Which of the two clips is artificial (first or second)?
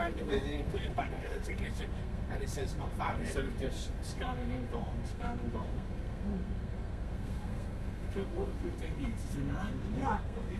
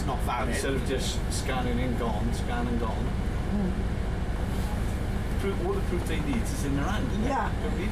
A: first